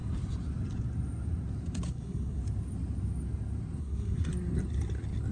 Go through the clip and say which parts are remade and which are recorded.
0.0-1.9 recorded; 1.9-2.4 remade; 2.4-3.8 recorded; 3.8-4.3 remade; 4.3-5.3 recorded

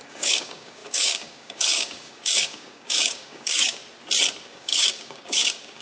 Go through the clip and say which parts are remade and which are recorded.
0.0-3.8 remade; 3.8-4.5 recorded; 4.5-5.8 remade